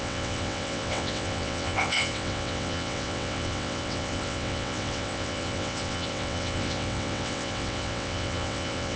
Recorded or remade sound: remade